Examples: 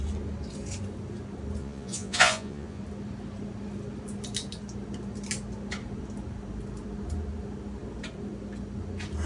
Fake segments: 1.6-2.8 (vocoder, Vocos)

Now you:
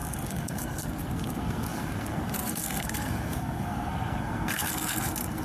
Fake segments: 0.0-5.4 (codec, SNAC)

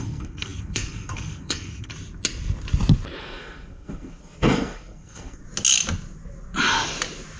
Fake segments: 0.0-1.9 (codec, SNAC); 3.2-5.4

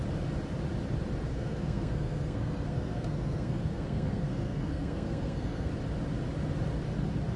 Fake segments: 1.3-5.7 (codec, SNAC)

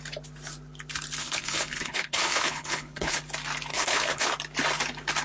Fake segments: 1.2-3.2 (codec, HILCodec); 3.7-4.3

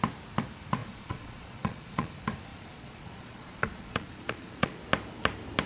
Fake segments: 0.8-2.1 (vocoder, Vocos); 2.5-4.8

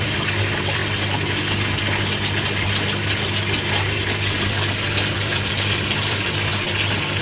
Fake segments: 0.0-0.8 (vocoder, BigVGAN v2); 5.1-6.5

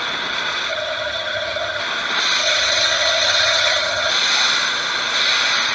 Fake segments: 0.7-1.8 (vocoder, HiFi-GAN); 2.4-4.1